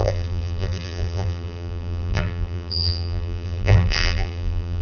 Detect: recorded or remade remade